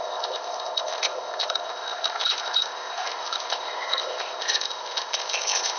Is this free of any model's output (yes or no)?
no